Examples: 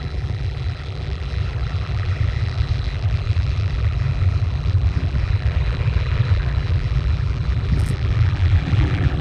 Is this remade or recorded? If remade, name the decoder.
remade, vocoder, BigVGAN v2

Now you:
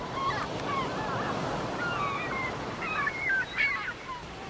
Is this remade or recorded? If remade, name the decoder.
remade, vocoder, BigVGAN v2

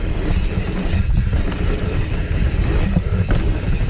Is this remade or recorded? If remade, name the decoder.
recorded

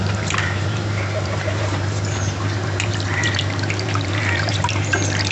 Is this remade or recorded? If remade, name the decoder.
remade, vocoder, BigVGAN v2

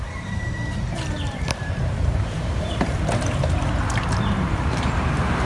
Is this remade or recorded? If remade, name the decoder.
remade, vocoder, BigVGAN v2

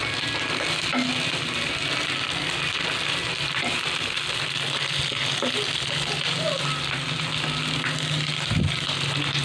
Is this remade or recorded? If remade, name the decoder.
recorded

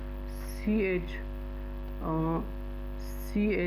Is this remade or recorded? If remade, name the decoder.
recorded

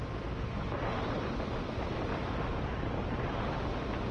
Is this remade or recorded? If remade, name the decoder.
recorded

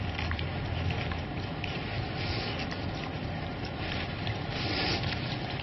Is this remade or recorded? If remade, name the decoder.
remade, vocoder, BigVGAN v2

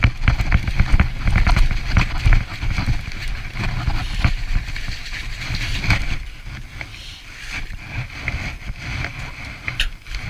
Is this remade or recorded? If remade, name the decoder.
recorded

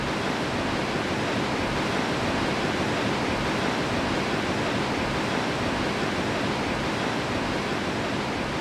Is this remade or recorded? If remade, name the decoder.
recorded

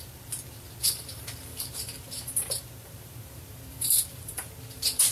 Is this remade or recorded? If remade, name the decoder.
remade, vocoder, BigVGAN v2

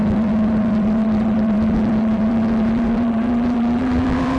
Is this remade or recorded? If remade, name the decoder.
remade, vocoder, BigVGAN v2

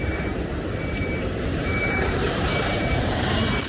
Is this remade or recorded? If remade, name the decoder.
remade, vocoder, BigVGAN v2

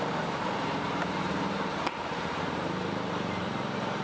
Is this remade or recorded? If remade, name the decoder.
remade, vocoder, BigVGAN v2